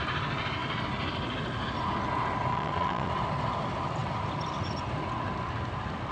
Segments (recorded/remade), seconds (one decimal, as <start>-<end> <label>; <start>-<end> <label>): 0.0-2.5 recorded; 2.5-3.1 remade; 3.1-6.1 recorded